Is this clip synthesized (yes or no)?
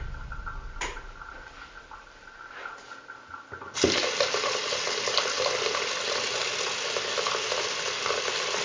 no